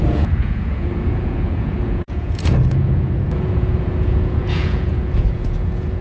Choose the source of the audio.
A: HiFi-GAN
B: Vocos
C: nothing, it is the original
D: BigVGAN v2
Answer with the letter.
B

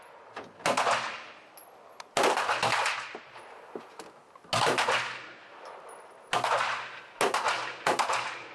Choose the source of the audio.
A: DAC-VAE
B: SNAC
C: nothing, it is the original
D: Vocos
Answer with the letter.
C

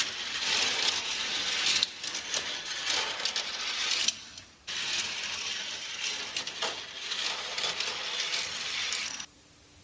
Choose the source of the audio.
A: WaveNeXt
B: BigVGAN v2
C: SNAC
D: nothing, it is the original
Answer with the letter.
D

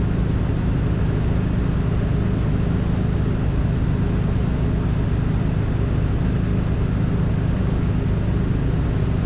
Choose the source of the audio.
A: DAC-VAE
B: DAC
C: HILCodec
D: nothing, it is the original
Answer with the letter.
D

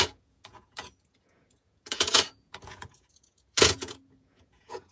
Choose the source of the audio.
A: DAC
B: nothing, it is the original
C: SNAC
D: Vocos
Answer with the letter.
D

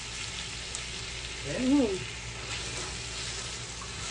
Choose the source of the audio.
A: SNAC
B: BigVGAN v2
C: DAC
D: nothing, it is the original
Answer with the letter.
D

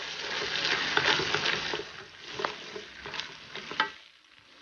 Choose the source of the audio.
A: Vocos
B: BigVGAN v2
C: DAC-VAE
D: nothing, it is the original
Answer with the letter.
D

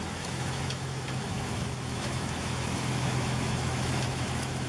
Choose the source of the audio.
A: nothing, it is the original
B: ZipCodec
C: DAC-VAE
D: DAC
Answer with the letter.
C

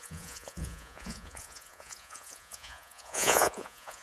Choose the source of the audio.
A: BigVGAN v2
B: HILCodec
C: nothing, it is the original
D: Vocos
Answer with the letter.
D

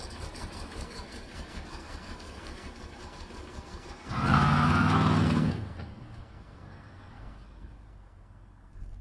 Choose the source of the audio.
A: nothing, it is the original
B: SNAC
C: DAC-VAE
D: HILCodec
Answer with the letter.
B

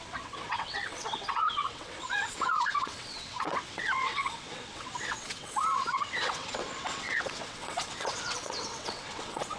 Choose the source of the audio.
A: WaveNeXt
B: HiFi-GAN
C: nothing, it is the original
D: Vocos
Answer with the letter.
A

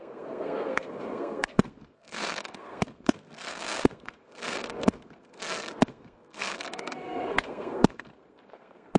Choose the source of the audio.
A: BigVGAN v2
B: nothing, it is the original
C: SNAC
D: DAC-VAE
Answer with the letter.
C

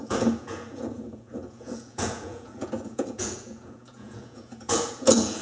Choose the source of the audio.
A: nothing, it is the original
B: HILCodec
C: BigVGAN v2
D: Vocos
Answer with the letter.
D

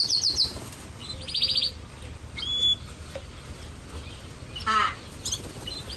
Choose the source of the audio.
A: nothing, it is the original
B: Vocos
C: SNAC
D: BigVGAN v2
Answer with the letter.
A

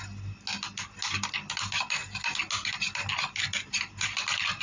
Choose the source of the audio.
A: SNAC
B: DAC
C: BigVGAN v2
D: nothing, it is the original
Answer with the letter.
D